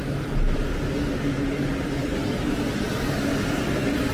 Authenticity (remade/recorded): recorded